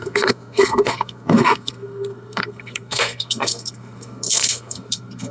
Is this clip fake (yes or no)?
yes